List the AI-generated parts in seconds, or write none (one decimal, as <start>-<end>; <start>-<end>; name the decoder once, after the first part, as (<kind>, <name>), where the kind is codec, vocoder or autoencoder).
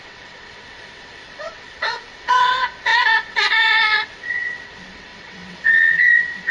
0.0-6.5 (vocoder, WaveNeXt)